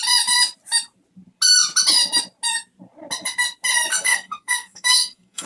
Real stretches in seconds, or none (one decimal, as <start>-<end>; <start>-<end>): 0.0-3.9